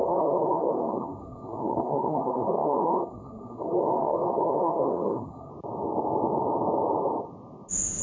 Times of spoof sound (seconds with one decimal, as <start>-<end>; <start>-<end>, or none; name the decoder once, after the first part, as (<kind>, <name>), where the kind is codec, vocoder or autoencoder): 0.0-5.5 (codec, SNAC)

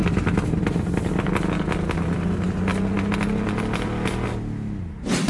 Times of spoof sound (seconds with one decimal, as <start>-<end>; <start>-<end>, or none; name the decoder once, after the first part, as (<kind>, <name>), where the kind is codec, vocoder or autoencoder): none